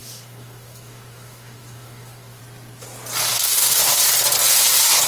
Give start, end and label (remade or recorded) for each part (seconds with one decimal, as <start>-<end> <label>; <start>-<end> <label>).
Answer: 0.0-2.4 remade; 2.4-3.3 recorded; 3.3-4.0 remade; 4.0-5.1 recorded